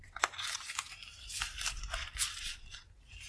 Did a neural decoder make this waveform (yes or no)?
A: no